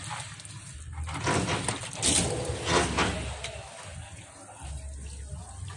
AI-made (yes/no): no